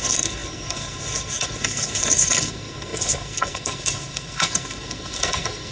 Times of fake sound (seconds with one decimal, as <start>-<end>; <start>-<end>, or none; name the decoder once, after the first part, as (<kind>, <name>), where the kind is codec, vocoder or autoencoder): 0.0-5.7 (codec, SNAC)